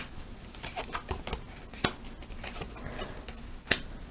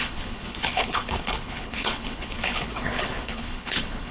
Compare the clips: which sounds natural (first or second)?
first